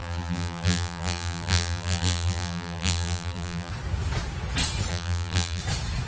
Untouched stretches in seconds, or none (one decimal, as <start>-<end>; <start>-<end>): 3.7-4.9; 5.6-6.1